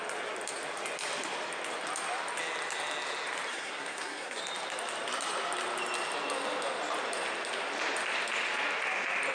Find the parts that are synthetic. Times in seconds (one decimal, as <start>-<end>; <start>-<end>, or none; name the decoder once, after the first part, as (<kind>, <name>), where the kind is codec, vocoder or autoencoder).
3.5-4.4 (codec, SNAC)